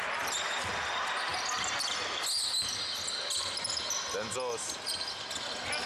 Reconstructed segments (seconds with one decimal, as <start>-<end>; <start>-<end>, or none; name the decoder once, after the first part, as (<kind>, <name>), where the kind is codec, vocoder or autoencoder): none